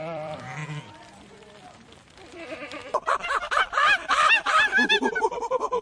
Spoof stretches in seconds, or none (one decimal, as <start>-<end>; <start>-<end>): 0.0-5.8